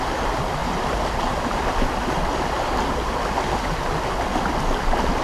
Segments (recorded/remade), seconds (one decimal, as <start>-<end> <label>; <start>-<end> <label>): 0.0-0.6 recorded; 0.6-1.6 remade; 1.6-5.2 recorded